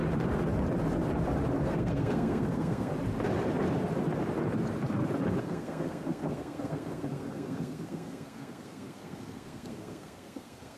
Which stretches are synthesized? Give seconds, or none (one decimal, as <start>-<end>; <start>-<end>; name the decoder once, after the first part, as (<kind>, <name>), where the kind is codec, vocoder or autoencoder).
1.6-2.9 (codec, SNAC); 5.4-10.8